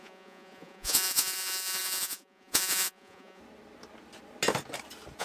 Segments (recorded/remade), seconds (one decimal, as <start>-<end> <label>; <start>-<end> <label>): 0.0-3.4 remade; 3.4-5.2 recorded